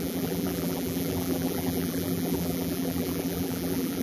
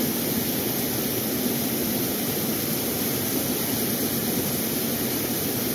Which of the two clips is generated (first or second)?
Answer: first